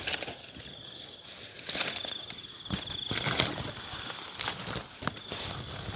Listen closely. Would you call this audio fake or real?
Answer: real